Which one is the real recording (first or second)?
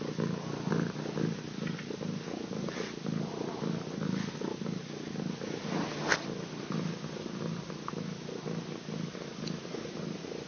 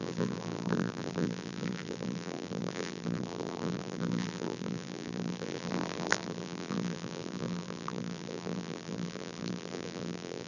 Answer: first